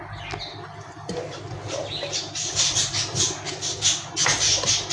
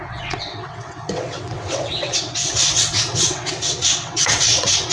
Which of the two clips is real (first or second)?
first